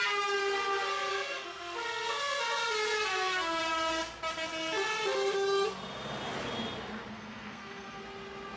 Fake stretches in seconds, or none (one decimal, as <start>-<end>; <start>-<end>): 1.1-2.4; 3.1-3.6; 7.1-8.0